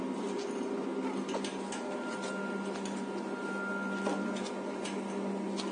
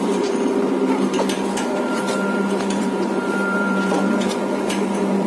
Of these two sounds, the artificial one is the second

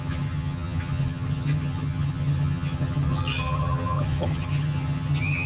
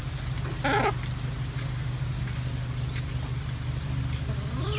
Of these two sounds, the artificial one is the first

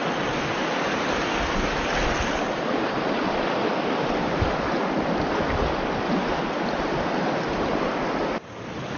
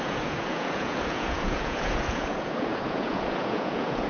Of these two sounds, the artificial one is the second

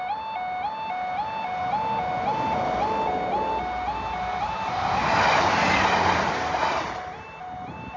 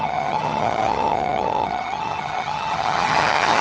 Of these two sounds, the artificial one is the second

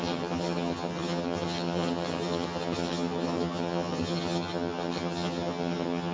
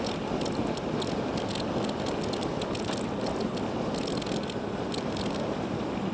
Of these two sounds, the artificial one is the first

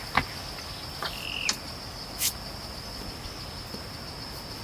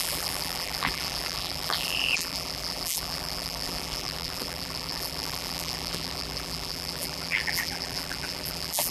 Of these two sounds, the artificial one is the second